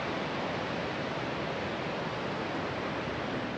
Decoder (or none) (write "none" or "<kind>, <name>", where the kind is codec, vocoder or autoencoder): none